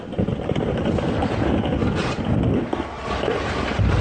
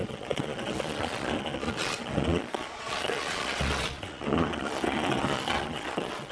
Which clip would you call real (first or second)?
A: first